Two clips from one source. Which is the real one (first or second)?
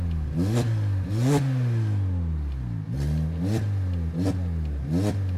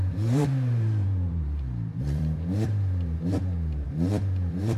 first